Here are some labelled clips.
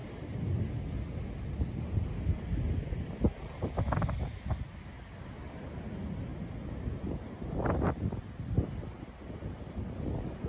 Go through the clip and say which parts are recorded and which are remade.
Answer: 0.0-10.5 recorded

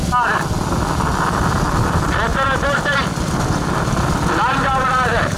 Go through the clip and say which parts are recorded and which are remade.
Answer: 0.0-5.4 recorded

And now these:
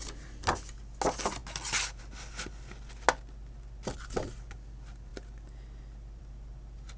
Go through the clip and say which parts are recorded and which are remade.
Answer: 0.0-7.0 recorded

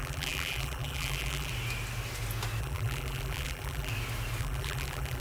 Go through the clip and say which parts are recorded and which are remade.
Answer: 0.0-1.5 remade; 1.5-2.6 recorded; 2.6-3.9 remade; 3.9-4.4 recorded; 4.4-5.2 remade

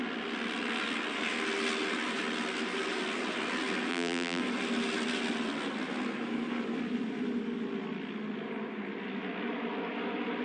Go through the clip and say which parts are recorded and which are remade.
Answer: 0.0-3.9 recorded; 3.9-4.4 remade; 4.4-10.4 recorded